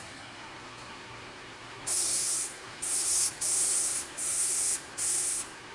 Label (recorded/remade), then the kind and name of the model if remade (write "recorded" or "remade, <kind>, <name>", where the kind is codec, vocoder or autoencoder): remade, codec, SNAC